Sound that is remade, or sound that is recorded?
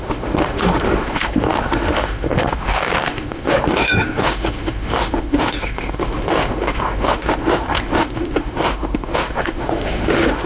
remade